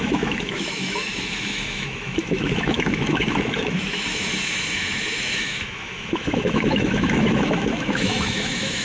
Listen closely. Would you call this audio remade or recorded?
remade